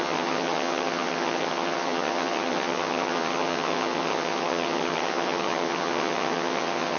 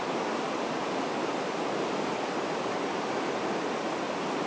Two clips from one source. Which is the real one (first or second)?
second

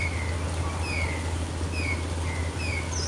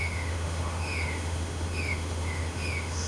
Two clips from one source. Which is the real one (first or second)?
first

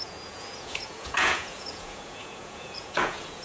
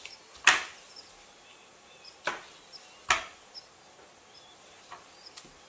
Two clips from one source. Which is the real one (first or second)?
second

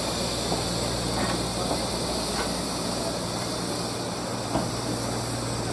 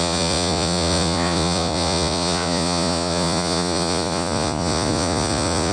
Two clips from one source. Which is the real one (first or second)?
first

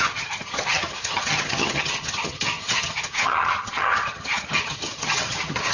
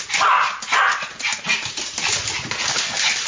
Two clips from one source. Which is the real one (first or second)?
second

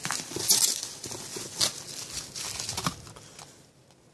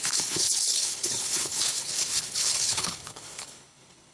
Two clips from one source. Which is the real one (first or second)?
first